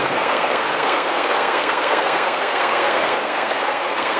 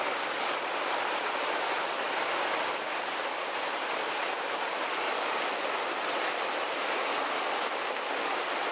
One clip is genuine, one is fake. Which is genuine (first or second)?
second